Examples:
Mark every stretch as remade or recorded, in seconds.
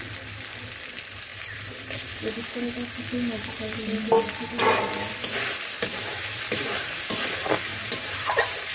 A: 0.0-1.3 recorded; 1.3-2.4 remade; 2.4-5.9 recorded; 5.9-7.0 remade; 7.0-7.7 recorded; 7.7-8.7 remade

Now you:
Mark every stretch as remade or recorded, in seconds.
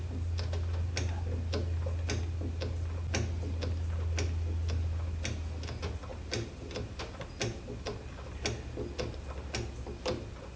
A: 0.0-6.1 recorded; 6.1-7.0 remade; 7.0-10.6 recorded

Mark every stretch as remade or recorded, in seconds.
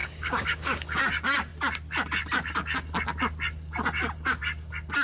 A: 0.0-1.0 remade; 1.0-5.0 recorded